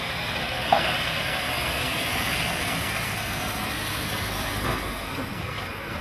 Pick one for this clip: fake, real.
fake